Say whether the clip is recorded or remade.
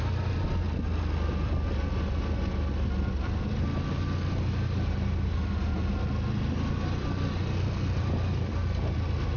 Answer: recorded